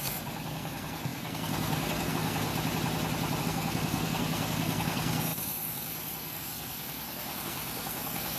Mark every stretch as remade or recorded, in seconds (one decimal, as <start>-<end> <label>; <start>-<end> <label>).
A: 0.0-2.5 remade; 2.5-3.4 recorded; 3.4-8.4 remade